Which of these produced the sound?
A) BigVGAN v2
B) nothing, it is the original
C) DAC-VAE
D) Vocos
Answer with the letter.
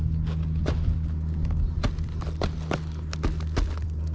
B